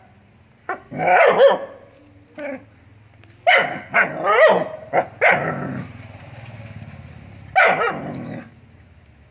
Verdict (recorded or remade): recorded